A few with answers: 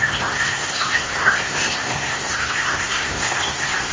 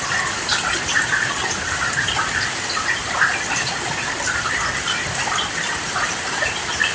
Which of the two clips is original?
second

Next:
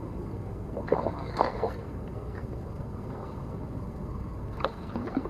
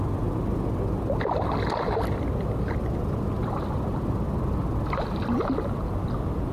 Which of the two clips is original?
second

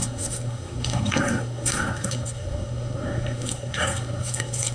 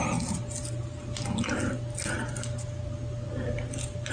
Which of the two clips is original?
second